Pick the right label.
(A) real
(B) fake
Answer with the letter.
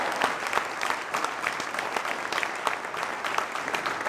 A